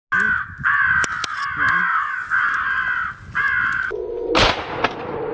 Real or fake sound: real